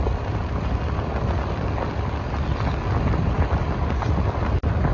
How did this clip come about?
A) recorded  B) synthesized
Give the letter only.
A